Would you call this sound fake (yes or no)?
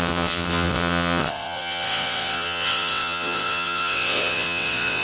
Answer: yes